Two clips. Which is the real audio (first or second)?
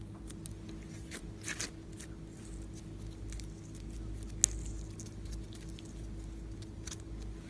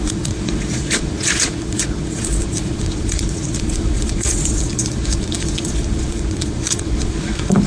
first